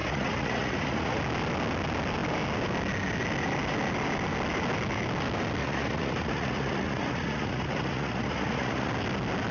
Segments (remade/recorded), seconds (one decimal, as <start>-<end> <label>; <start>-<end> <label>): 0.0-1.2 remade; 1.2-5.6 recorded; 5.6-8.9 remade; 8.9-9.5 recorded

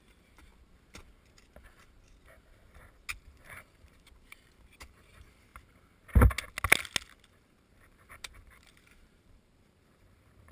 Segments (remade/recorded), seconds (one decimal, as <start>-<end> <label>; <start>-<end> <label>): 0.0-0.5 remade; 0.5-3.2 recorded; 3.2-5.5 remade; 5.5-7.3 recorded; 7.3-10.5 remade

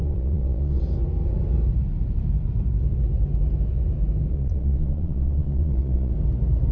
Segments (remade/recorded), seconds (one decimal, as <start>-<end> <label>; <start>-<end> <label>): 0.0-0.8 remade; 0.8-4.3 recorded; 4.3-6.1 remade; 6.1-6.7 recorded

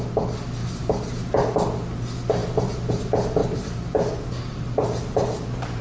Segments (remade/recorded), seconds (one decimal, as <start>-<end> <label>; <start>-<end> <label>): 0.0-0.6 recorded; 0.6-1.4 remade; 1.4-3.4 recorded; 3.4-5.8 remade

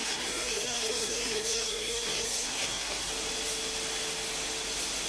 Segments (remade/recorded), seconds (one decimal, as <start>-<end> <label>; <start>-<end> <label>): 0.0-3.1 remade; 3.1-5.1 recorded

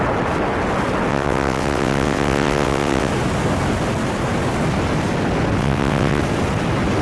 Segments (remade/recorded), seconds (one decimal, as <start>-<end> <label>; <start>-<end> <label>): 0.0-1.1 recorded; 1.1-3.1 remade; 3.1-5.6 recorded; 5.6-6.2 remade; 6.2-7.0 recorded

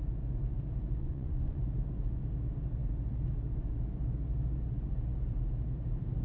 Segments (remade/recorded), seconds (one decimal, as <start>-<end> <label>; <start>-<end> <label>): 0.0-1.0 recorded; 1.0-1.6 remade; 1.6-6.2 recorded

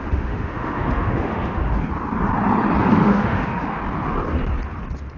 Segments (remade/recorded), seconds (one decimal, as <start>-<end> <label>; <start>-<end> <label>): 0.0-1.6 remade; 1.6-2.9 recorded; 2.9-3.8 remade; 3.8-5.2 recorded